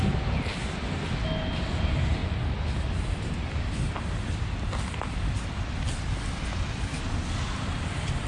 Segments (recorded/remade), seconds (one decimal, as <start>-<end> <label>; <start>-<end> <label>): 0.0-8.3 recorded